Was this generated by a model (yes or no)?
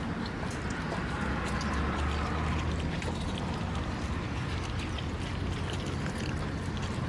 yes